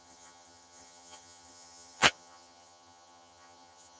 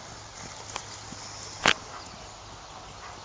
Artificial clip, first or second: first